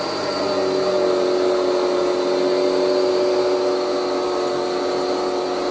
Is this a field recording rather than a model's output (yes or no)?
yes